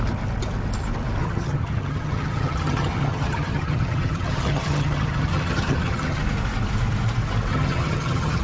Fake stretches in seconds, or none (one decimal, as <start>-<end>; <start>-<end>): 1.2-6.2; 7.5-8.4